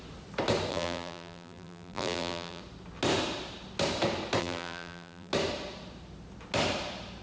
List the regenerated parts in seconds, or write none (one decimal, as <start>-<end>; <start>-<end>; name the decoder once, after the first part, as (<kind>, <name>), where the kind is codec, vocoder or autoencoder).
0.7-2.6 (vocoder, BigVGAN v2); 4.4-5.3